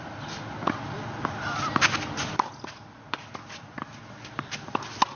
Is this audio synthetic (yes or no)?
no